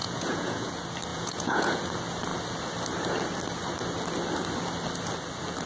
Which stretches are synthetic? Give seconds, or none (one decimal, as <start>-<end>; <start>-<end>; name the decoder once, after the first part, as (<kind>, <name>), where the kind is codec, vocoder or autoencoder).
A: 0.0-0.7 (vocoder, Vocos); 1.1-1.8